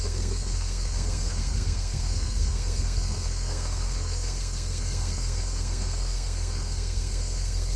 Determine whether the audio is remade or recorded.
remade